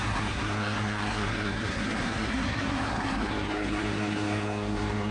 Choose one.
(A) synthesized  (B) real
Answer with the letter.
A